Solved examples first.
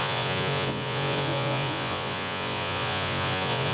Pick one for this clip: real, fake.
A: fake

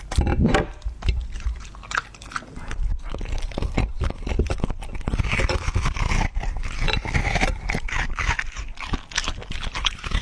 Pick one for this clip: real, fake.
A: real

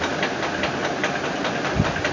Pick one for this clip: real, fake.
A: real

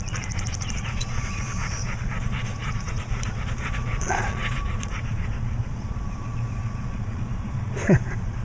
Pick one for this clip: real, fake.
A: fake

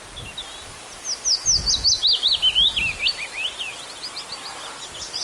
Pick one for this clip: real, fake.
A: real